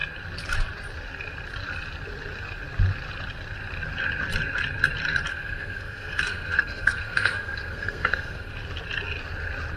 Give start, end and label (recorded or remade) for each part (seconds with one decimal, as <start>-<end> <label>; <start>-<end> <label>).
0.0-5.3 recorded; 5.3-8.5 remade; 8.5-9.8 recorded